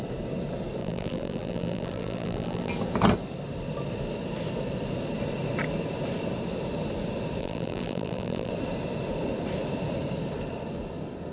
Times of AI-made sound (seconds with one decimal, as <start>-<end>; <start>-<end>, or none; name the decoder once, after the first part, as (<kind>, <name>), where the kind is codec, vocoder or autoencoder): 0.8-2.7 (vocoder, BigVGAN v2); 7.4-8.5